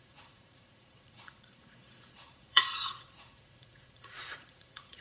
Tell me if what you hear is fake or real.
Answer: fake